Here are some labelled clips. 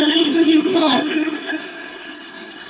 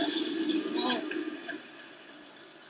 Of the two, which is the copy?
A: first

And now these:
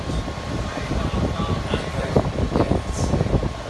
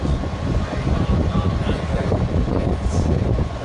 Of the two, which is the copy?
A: second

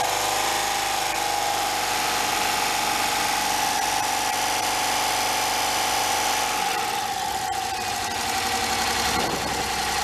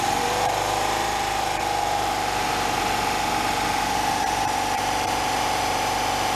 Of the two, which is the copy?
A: second